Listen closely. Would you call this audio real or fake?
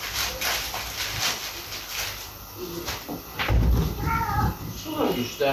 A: real